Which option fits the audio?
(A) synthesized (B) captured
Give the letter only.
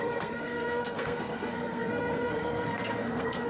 A